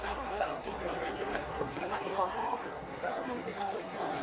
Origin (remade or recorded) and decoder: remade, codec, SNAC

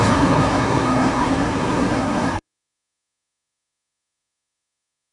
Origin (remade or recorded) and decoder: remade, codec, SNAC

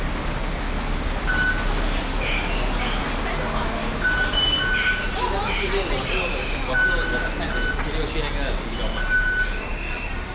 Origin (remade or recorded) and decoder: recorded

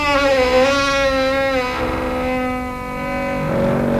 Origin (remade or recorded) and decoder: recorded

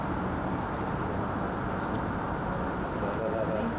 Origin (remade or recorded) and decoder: recorded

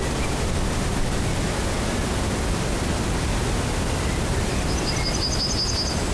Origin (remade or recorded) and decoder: recorded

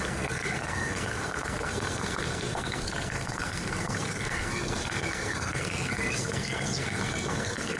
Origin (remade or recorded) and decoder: remade, codec, SNAC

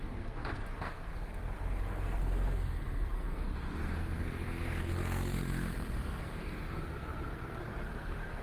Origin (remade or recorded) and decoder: remade, codec, SNAC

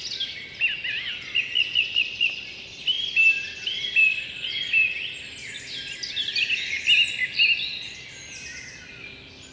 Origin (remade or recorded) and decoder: recorded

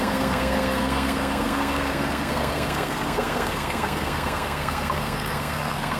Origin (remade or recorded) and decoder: remade, codec, SNAC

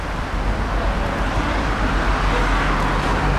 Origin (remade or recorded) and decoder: recorded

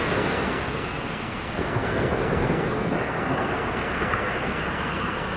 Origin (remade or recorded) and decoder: remade, codec, SNAC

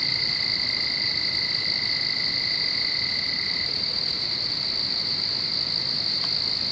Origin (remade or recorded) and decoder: recorded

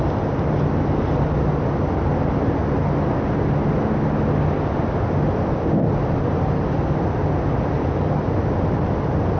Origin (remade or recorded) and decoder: recorded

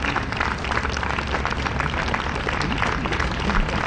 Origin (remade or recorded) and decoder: recorded